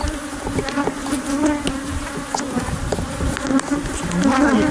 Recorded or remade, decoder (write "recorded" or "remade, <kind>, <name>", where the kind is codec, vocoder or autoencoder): recorded